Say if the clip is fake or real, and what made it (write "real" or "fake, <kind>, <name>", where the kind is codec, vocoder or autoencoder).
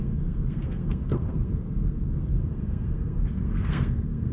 fake, codec, SNAC